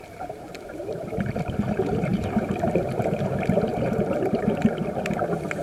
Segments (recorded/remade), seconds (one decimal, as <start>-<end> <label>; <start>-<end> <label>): 0.0-5.6 remade